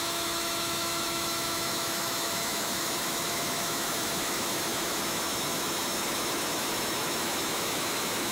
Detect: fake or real fake